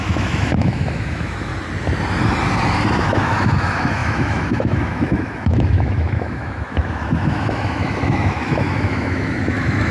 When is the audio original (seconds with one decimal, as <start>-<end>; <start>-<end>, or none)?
1.5-3.0